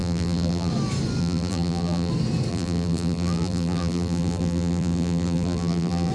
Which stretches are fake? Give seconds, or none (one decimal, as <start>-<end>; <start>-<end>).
0.0-0.7; 1.2-2.1; 2.5-6.1